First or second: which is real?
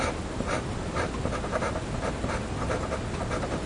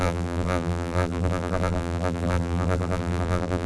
first